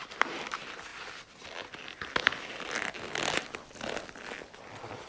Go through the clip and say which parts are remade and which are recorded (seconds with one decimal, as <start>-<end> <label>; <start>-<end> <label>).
0.0-5.1 recorded